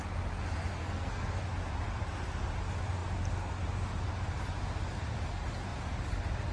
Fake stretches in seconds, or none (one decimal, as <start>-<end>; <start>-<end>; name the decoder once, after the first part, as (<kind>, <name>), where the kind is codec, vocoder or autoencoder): 0.8-1.4 (codec, SNAC)